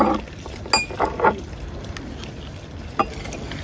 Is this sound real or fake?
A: real